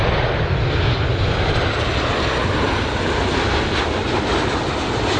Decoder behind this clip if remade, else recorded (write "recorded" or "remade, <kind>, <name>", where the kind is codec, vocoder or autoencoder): recorded